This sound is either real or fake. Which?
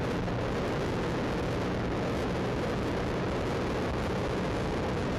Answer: real